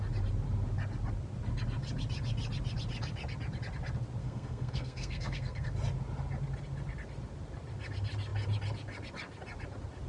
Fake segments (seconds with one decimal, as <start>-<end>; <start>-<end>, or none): 4.2-5.7